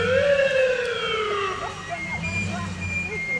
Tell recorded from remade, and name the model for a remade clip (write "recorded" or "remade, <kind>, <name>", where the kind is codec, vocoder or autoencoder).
recorded